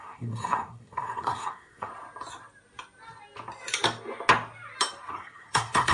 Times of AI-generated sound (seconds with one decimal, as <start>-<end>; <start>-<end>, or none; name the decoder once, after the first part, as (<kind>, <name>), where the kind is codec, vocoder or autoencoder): 0.0-1.9 (codec, SNAC); 5.1-5.9